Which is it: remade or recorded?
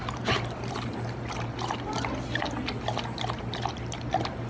recorded